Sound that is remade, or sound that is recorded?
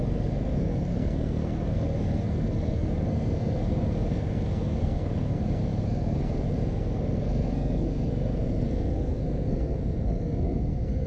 remade